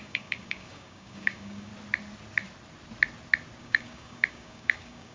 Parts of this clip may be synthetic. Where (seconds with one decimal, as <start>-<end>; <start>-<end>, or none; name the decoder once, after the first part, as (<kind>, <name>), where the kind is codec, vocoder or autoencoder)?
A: 0.0-1.7 (codec, DAC); 3.6-5.1